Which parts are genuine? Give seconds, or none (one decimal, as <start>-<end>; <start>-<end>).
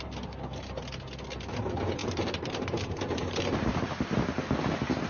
0.0-2.0; 4.0-5.1